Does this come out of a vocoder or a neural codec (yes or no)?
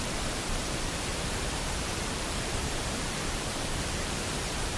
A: yes